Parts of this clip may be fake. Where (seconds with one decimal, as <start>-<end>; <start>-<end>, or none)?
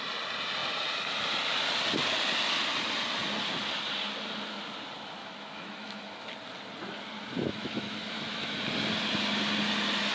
5.2-6.3; 7.5-8.6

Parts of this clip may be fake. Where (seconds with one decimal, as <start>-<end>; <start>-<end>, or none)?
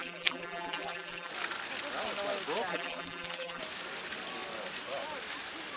0.0-1.3; 2.7-3.6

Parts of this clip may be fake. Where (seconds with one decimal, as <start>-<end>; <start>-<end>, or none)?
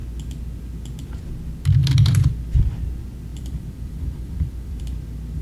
1.8-2.3; 3.3-4.8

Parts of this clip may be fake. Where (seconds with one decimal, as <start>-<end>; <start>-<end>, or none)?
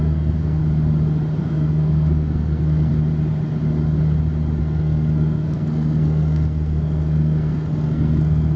0.0-0.6; 1.4-2.9; 4.6-8.6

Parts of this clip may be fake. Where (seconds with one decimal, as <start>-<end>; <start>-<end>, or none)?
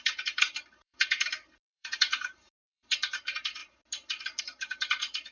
0.0-3.6; 4.4-5.3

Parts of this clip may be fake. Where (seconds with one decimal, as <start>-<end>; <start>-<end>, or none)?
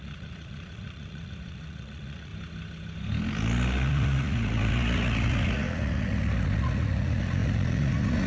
0.0-2.3; 3.9-8.3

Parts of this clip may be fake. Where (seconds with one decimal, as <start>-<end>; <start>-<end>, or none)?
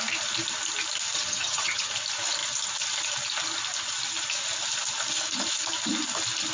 1.2-1.9